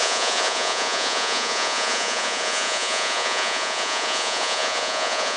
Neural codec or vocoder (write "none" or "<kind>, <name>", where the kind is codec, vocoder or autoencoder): vocoder, Vocos